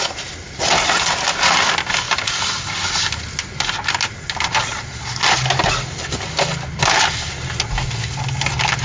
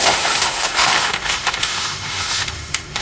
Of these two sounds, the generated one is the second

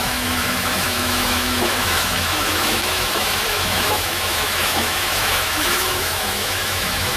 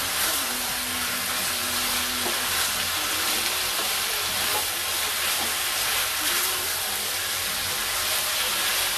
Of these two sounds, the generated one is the first